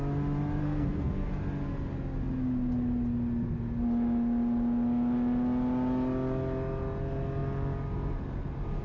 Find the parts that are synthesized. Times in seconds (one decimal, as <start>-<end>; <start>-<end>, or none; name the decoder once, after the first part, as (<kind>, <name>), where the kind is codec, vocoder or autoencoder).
0.6-1.3 (codec, SNAC)